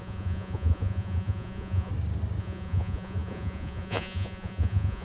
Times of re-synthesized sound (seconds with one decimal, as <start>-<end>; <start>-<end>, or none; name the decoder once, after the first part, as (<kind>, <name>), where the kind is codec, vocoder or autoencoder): 0.0-1.9 (vocoder, Vocos); 2.4-5.0